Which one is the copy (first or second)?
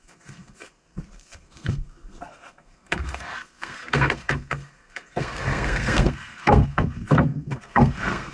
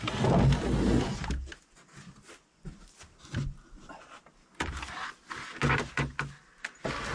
first